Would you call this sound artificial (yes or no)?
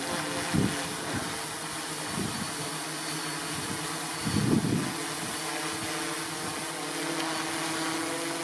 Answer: no